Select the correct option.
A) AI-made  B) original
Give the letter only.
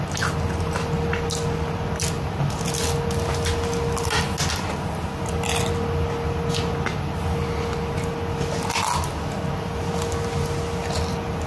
B